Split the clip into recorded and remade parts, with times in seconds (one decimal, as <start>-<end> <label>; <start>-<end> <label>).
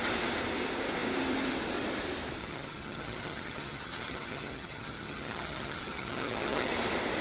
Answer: 0.0-2.4 recorded; 2.4-6.7 remade; 6.7-7.2 recorded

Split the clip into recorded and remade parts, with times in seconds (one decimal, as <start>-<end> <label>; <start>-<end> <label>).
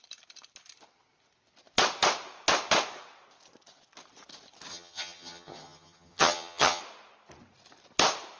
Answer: 0.0-4.7 recorded; 4.7-6.8 remade; 6.8-8.4 recorded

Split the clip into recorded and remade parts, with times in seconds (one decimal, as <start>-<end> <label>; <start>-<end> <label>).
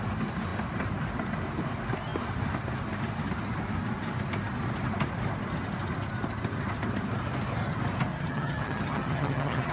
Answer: 0.0-8.1 recorded; 8.1-9.7 remade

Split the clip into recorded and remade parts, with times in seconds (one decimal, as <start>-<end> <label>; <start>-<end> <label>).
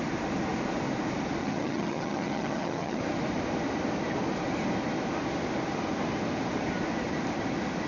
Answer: 0.0-1.4 recorded; 1.4-3.0 remade; 3.0-7.9 recorded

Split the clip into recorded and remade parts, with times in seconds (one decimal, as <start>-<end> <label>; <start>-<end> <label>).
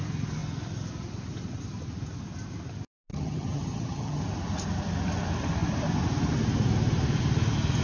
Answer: 0.0-3.1 recorded; 3.1-4.2 remade; 4.2-7.8 recorded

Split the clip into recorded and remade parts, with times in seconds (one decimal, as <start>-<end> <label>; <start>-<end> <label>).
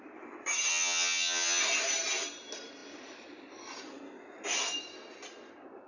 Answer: 0.0-0.7 recorded; 0.7-1.6 remade; 1.6-5.9 recorded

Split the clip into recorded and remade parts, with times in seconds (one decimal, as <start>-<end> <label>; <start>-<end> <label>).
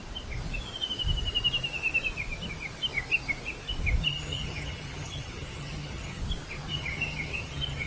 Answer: 0.0-4.1 recorded; 4.1-6.2 remade; 6.2-6.7 recorded; 6.7-7.9 remade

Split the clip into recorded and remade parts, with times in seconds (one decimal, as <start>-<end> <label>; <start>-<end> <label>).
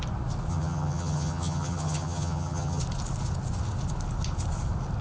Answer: 0.0-0.5 recorded; 0.5-2.8 remade; 2.8-5.0 recorded